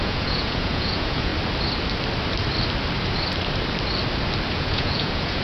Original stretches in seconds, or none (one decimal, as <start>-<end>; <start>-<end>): 1.3-4.5